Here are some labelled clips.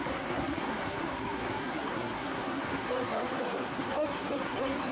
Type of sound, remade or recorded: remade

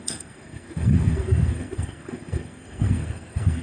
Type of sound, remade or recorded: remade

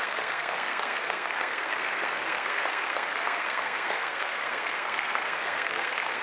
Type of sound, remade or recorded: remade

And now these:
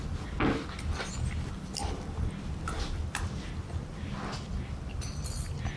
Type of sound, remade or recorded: recorded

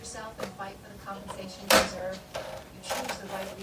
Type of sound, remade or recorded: recorded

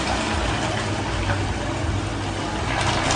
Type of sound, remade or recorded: recorded